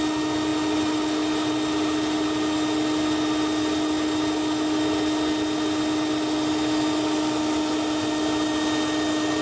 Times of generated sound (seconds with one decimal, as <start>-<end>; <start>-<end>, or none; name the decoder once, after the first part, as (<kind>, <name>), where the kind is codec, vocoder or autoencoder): none